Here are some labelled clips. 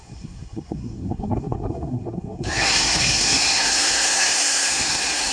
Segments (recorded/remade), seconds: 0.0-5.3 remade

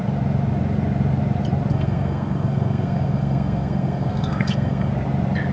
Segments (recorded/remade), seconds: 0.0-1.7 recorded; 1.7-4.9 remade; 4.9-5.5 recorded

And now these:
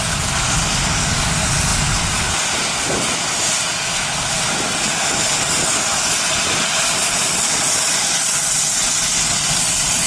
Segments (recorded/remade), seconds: 0.0-10.1 recorded